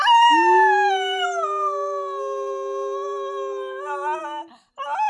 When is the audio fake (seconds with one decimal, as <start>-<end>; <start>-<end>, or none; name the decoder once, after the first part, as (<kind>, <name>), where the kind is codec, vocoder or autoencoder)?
none

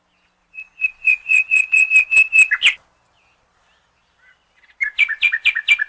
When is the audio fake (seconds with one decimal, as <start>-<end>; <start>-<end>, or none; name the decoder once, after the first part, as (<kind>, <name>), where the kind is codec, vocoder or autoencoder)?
0.4-1.9 (vocoder, Vocos)

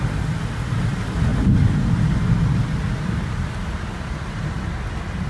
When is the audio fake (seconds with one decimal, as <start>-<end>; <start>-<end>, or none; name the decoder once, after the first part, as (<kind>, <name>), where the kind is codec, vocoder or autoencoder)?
none

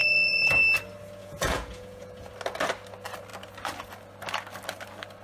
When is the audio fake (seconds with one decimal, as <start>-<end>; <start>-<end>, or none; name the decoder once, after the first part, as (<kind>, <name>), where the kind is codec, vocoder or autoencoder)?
0.0-0.6 (vocoder, Vocos); 1.2-2.3